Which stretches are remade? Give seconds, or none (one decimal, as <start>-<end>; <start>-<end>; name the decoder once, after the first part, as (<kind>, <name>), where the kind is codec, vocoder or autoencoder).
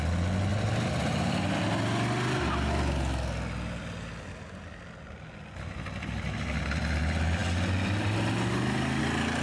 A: 0.5-1.6 (vocoder, BigVGAN v2)